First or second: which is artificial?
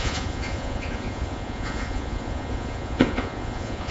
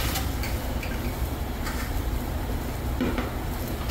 first